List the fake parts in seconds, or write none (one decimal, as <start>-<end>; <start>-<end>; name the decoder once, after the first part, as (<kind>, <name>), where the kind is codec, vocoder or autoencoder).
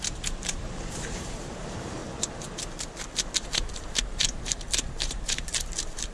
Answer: 0.0-2.0 (vocoder, BigVGAN v2); 3.3-6.1